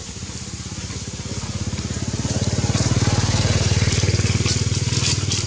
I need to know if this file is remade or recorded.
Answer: recorded